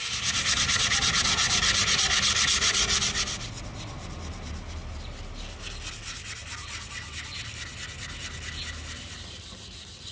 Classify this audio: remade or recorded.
recorded